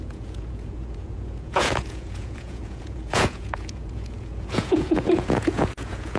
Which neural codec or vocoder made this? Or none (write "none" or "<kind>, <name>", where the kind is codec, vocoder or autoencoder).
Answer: vocoder, Vocos